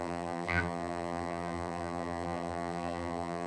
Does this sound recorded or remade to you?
remade